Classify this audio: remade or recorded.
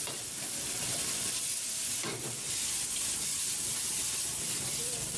remade